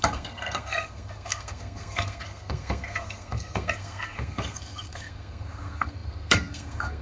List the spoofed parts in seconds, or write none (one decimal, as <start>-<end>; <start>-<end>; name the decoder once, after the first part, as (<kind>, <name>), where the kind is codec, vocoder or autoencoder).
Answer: 0.0-7.0 (codec, SNAC)